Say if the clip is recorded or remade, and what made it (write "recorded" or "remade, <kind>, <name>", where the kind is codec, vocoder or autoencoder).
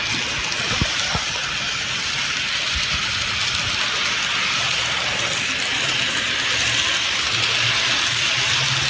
recorded